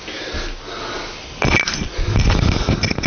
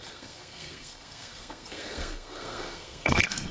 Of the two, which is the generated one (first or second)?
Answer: second